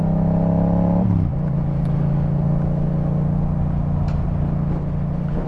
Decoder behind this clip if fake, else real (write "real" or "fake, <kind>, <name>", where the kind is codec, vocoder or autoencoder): real